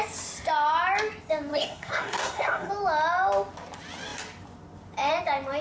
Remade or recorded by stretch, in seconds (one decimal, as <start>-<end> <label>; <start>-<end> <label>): 0.0-1.5 recorded; 1.5-2.7 remade; 2.7-5.6 recorded